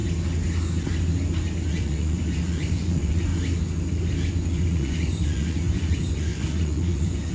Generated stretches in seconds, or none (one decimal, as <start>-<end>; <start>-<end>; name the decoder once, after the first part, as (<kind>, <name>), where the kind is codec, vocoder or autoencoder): 1.7-3.3 (vocoder, Vocos); 4.4-7.3